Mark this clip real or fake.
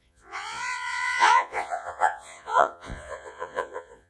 fake